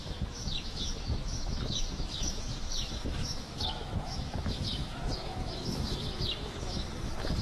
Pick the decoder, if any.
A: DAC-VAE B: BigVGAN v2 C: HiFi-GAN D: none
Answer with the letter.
A